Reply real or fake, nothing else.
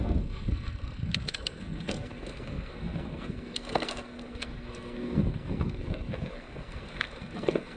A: fake